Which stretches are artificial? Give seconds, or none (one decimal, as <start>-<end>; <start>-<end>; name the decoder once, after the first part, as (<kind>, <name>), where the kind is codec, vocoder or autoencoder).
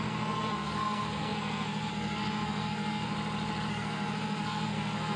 0.0-3.1 (codec, SNAC); 3.7-5.2